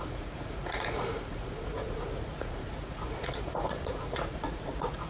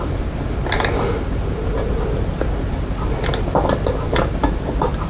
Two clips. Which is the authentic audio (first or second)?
second